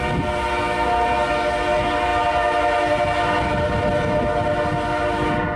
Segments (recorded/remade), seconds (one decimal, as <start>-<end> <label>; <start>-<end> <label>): 0.0-5.6 recorded